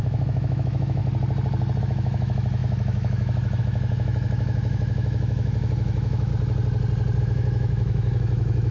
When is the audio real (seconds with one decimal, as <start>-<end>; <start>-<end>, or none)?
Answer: 1.0-1.8; 6.3-7.2